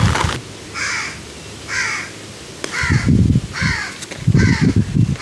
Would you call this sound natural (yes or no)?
yes